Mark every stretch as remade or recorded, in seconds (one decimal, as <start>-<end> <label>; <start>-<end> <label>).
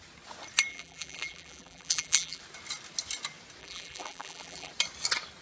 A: 0.0-0.7 recorded; 0.7-2.4 remade; 2.4-3.6 recorded; 3.6-4.7 remade; 4.7-5.4 recorded